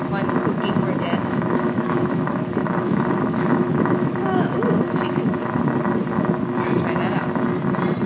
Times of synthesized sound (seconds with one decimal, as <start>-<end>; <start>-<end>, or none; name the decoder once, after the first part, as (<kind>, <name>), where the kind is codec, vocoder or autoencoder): 1.2-5.6 (autoencoder, DAC-VAE)